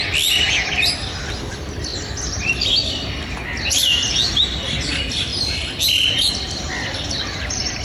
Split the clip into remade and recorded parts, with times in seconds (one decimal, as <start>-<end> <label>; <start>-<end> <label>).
0.0-5.3 recorded; 5.3-7.8 remade